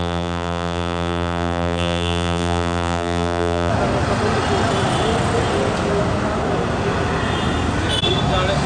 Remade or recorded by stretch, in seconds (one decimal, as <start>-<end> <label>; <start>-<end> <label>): 0.0-3.7 remade; 3.7-8.7 recorded